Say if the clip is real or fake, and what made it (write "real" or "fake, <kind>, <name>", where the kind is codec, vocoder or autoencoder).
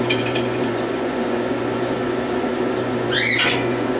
fake, vocoder, Vocos